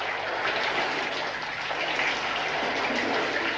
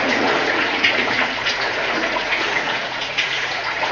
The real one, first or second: first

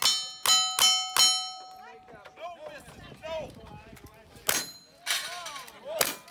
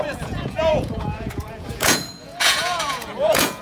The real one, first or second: first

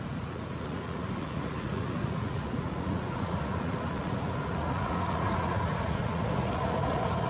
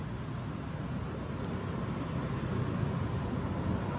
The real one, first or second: second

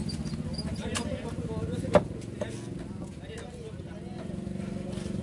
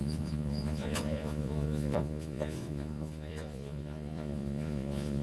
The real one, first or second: first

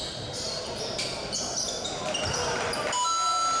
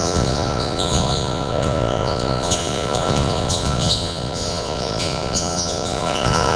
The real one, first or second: first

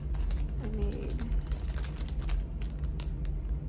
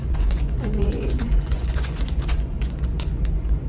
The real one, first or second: first